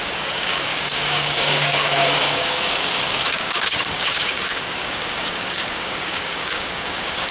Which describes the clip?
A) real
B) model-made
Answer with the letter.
B